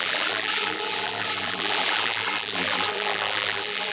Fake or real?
fake